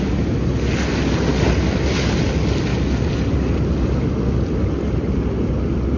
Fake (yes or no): no